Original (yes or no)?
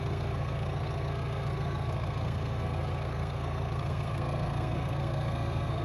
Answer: no